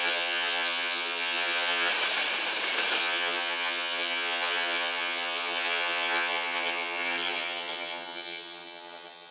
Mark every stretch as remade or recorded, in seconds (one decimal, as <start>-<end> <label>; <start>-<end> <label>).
0.0-1.9 remade; 1.9-3.0 recorded; 3.0-9.3 remade